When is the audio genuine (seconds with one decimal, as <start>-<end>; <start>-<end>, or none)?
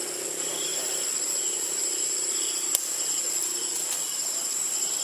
0.0-5.0